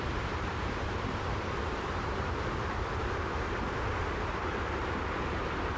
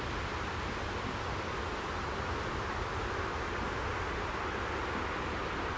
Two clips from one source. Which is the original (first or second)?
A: second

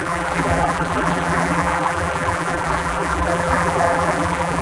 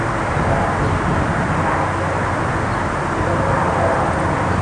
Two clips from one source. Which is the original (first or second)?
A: second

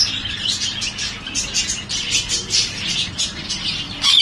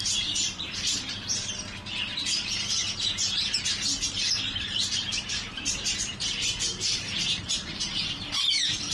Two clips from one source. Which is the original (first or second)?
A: first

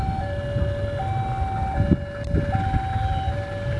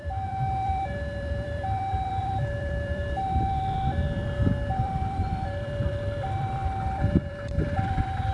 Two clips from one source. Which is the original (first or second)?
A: first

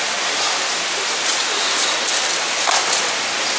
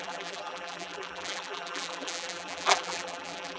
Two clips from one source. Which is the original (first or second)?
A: first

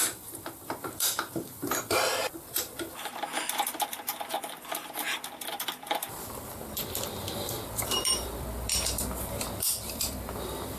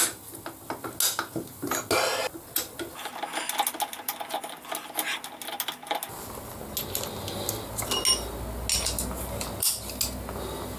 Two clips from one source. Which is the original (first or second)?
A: second